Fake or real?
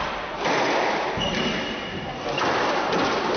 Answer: real